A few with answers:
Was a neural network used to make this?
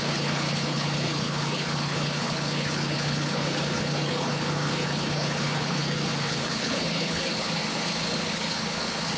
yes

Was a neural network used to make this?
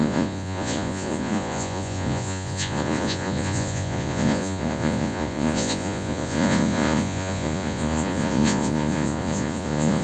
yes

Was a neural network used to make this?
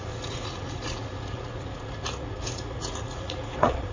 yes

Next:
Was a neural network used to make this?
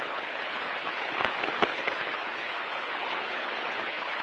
yes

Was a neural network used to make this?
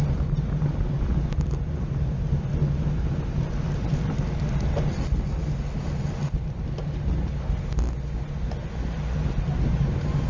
no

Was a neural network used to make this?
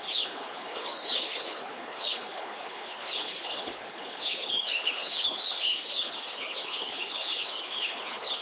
yes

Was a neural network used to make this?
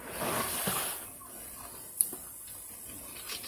no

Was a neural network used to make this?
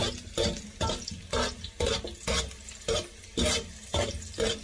no